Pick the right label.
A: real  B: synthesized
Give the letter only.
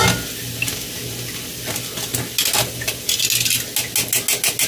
A